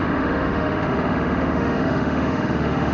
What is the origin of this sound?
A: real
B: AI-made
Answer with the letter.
B